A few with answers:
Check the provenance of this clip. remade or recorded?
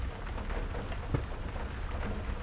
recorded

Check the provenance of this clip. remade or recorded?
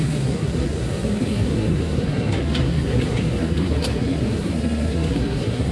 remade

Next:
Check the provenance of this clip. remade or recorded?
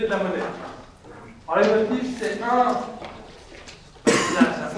recorded